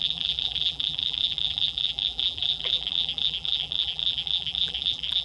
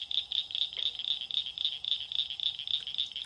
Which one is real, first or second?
second